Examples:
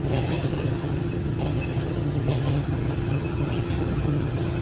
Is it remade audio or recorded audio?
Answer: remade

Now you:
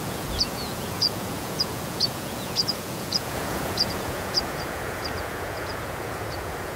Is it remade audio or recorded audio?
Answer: remade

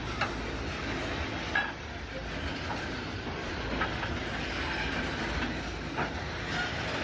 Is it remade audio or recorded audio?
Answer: recorded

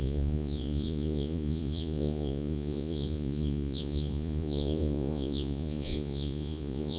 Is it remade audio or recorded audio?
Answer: remade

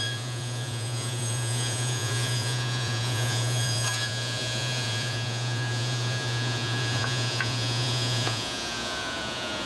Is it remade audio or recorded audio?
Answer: remade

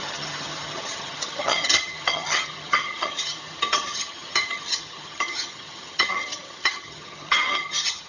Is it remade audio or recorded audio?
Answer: remade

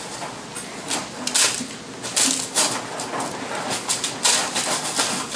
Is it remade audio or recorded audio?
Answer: recorded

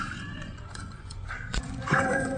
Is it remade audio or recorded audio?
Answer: remade